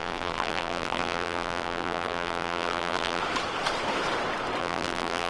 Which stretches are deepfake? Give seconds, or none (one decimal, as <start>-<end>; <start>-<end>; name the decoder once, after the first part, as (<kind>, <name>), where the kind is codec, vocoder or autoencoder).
0.0-3.2 (vocoder, BigVGAN v2); 4.6-5.3